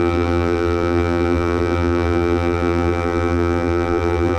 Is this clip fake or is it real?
fake